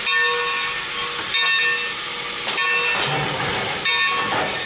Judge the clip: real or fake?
real